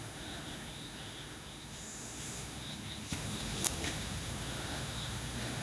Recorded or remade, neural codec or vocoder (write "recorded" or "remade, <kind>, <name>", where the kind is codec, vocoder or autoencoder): remade, autoencoder, DAC-VAE